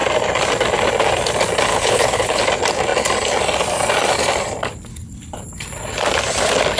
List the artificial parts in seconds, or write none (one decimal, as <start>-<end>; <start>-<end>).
1.7-2.4; 4.9-5.4